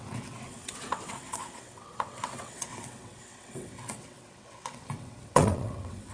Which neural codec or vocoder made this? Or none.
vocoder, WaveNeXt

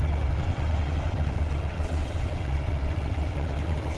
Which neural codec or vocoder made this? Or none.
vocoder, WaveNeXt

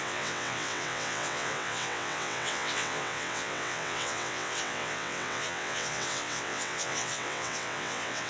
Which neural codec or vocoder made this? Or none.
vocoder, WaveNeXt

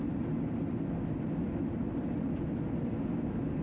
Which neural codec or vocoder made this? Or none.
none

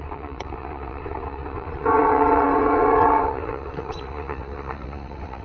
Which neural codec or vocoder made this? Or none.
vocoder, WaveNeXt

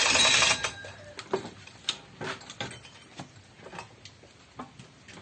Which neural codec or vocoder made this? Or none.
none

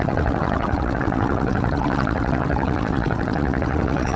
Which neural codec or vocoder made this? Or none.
vocoder, WaveNeXt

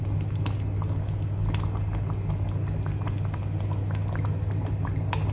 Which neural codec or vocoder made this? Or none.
none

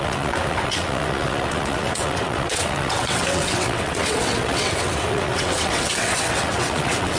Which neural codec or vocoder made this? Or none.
vocoder, WaveNeXt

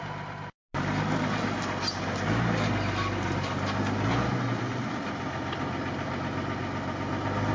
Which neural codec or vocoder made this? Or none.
none